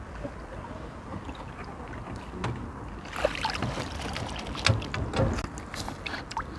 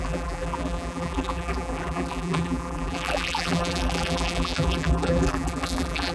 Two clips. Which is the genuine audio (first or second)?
first